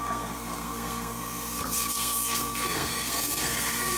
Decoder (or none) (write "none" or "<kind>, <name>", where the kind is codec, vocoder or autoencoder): codec, SNAC